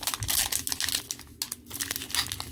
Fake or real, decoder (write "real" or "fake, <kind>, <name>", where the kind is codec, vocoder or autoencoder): real